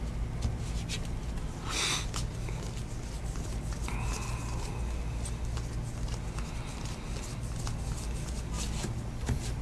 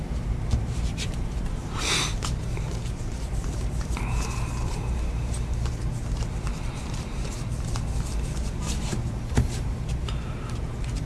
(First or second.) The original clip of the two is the first